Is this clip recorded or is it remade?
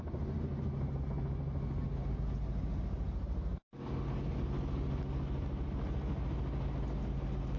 recorded